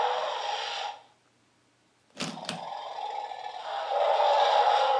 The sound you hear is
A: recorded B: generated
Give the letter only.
A